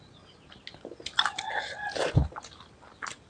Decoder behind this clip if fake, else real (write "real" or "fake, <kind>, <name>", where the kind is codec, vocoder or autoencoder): real